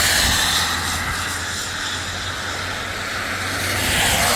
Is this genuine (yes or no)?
yes